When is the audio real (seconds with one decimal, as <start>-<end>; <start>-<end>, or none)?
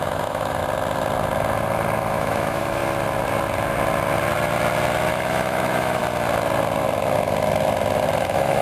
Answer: 0.6-2.1; 2.8-5.1; 6.0-8.2